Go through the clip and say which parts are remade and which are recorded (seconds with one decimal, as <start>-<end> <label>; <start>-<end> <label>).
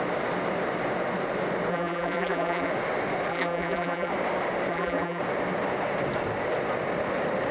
0.0-1.7 recorded; 1.7-2.7 remade; 2.7-3.3 recorded; 3.3-4.1 remade; 4.1-4.7 recorded; 4.7-5.2 remade; 5.2-7.5 recorded